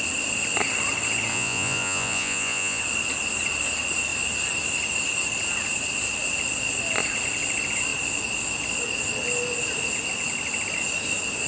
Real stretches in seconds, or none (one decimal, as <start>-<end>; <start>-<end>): 0.0-1.3; 2.8-11.5